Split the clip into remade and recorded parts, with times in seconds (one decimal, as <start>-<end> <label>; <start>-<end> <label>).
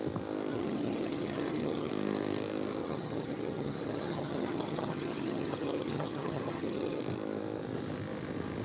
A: 0.0-0.5 recorded; 0.5-1.9 remade; 1.9-2.8 recorded; 2.8-7.0 remade; 7.0-8.6 recorded